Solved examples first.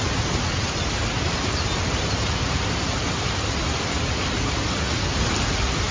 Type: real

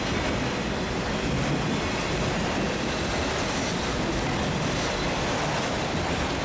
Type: real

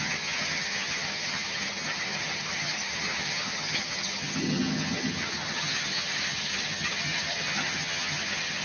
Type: fake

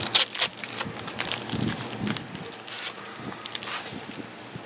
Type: real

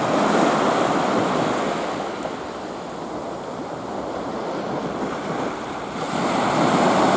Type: real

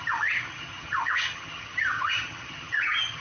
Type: fake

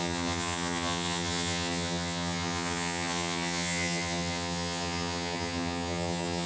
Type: fake